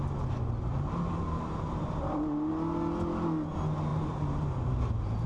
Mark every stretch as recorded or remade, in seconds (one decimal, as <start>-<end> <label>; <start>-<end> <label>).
0.0-0.7 recorded; 0.7-2.5 remade; 2.5-3.9 recorded; 3.9-5.3 remade